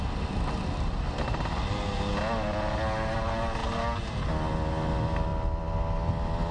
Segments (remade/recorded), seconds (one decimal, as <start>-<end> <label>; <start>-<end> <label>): 0.0-6.5 recorded